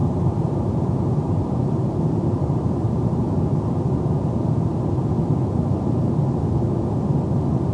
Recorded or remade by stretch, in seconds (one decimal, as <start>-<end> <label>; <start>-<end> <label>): 0.0-3.4 remade; 3.4-5.4 recorded; 5.4-6.1 remade; 6.1-7.7 recorded